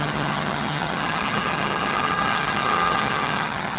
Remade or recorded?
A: remade